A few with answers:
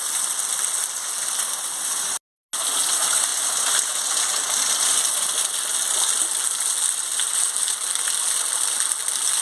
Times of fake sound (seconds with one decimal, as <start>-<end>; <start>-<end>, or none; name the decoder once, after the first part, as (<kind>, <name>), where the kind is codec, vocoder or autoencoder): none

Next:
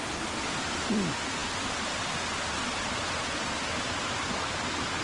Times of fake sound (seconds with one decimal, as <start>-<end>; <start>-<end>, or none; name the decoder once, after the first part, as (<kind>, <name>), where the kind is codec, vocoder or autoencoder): none

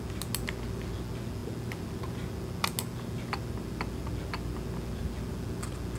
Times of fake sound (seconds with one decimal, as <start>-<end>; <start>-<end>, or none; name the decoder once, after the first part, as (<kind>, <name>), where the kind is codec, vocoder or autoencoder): none